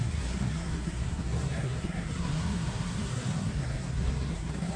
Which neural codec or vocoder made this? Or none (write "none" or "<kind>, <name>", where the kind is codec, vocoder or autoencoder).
codec, SNAC